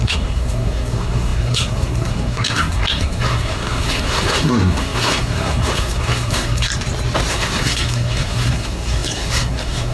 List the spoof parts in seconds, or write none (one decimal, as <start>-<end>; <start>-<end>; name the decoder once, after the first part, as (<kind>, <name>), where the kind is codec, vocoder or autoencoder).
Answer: 0.0-6.7 (codec, SNAC); 7.3-9.9